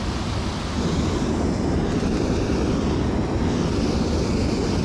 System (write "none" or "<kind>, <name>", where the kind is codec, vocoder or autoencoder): none